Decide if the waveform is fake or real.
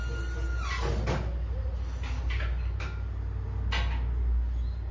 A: real